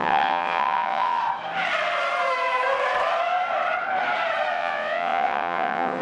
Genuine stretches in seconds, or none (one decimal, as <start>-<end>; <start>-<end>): 1.2-4.5